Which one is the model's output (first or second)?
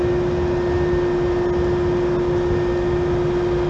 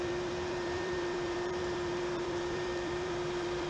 second